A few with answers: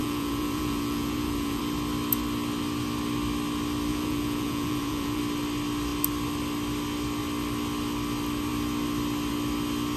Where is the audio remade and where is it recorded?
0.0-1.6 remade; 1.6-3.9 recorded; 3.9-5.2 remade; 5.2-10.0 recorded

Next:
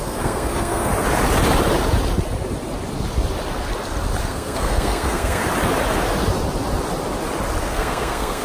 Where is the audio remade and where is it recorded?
0.0-0.9 remade; 0.9-4.2 recorded; 4.2-5.4 remade; 5.4-7.6 recorded; 7.6-8.4 remade

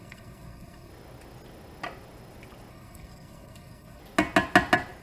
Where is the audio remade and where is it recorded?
0.0-0.9 remade; 0.9-2.7 recorded; 2.7-4.0 remade; 4.0-5.0 recorded

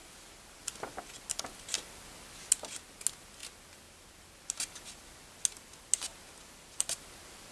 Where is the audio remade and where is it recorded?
0.0-7.5 recorded

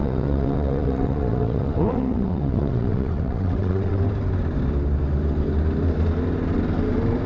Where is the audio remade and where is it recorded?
0.0-4.0 remade; 4.0-7.3 recorded

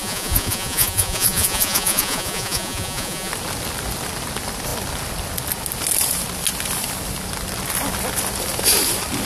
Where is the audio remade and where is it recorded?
0.0-3.3 remade; 3.3-9.3 recorded

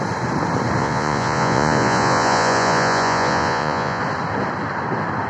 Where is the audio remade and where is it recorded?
0.0-0.8 recorded; 0.8-4.0 remade; 4.0-5.3 recorded

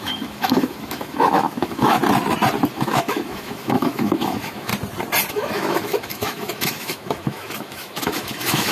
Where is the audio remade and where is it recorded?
0.0-2.0 remade; 2.0-2.7 recorded; 2.7-4.7 remade; 4.7-5.3 recorded; 5.3-8.7 remade